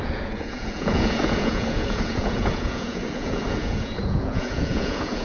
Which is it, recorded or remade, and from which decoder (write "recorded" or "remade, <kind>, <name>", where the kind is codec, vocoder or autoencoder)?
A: remade, vocoder, Vocos